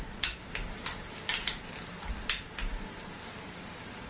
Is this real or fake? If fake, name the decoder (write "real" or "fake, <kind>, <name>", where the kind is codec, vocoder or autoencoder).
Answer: fake, vocoder, BigVGAN v2